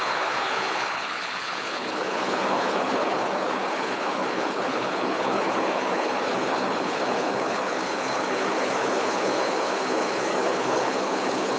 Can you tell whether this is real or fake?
fake